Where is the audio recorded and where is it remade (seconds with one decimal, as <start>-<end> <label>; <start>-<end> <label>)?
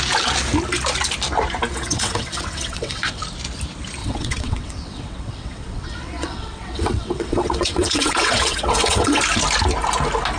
0.0-1.7 recorded; 1.7-3.2 remade; 3.2-4.0 recorded; 4.0-9.2 remade; 9.2-10.4 recorded